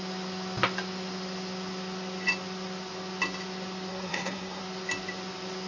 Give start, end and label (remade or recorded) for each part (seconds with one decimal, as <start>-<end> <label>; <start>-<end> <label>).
0.0-3.9 recorded; 3.9-4.6 remade; 4.6-5.7 recorded